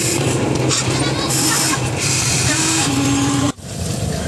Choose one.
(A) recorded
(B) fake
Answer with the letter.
A